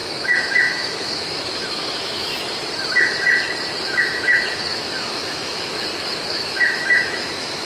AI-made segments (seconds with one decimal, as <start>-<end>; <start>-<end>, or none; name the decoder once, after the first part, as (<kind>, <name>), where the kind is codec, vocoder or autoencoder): 0.0-2.3 (autoencoder, DAC-VAE); 4.0-5.8; 6.3-7.7